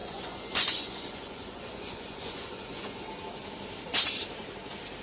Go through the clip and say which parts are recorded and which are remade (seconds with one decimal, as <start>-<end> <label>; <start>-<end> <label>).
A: 0.0-3.0 remade; 3.0-5.0 recorded